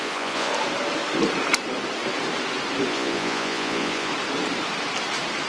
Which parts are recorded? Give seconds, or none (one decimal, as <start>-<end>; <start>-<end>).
0.5-2.9; 4.1-5.5